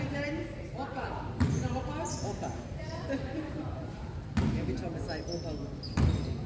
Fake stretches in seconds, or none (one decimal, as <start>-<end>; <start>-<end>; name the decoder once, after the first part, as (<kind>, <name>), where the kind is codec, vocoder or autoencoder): 0.9-4.3 (vocoder, BigVGAN v2)